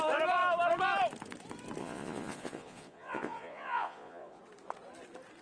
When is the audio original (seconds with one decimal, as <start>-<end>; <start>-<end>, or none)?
0.0-1.8; 4.4-5.4